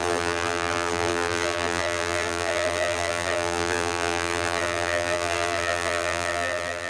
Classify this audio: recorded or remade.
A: remade